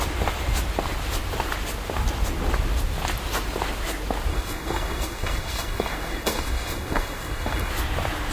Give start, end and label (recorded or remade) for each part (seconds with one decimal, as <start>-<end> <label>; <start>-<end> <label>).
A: 0.0-4.3 recorded; 4.3-7.7 remade; 7.7-8.3 recorded